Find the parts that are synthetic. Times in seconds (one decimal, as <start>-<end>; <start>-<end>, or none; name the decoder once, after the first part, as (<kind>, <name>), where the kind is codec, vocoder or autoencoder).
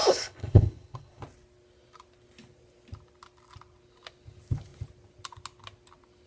0.0-1.2 (codec, HILCodec)